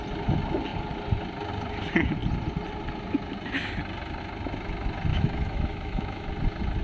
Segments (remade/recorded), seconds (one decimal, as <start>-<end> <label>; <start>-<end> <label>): 0.0-5.1 recorded; 5.1-6.3 remade; 6.3-6.8 recorded